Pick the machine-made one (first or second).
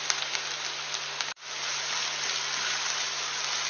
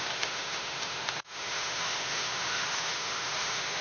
second